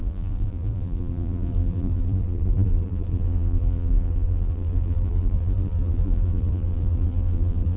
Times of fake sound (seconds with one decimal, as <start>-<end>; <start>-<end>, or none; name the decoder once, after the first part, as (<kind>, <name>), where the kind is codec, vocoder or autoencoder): 0.0-7.8 (vocoder, BigVGAN v2)